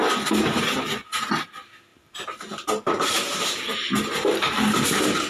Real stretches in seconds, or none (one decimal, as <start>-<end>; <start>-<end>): 0.0-1.9